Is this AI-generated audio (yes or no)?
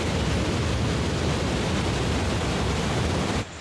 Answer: no